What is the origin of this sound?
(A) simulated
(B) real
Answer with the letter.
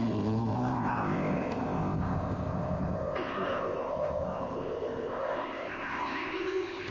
A